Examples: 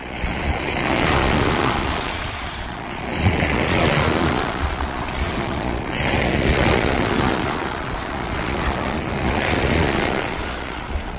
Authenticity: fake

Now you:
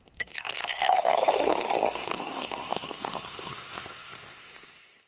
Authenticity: fake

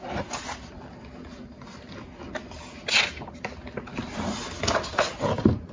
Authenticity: real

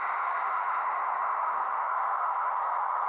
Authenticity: fake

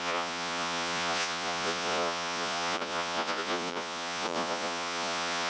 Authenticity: fake